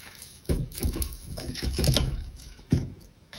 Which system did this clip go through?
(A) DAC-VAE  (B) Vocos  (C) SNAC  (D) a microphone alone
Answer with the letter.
A